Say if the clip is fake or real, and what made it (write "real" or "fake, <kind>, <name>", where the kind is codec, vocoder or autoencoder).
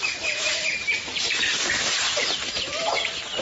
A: fake, vocoder, BigVGAN v2